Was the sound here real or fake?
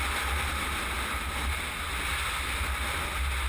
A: real